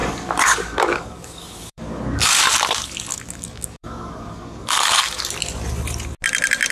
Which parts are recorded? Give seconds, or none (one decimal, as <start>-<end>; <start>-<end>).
2.4-3.1; 5.2-6.7